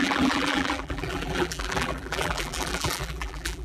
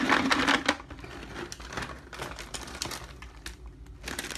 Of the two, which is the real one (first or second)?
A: second